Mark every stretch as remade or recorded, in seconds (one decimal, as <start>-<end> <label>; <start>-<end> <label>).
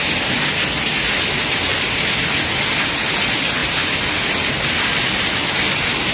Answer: 0.0-6.1 recorded